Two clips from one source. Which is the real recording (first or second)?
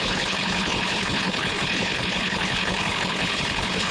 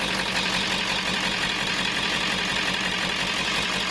second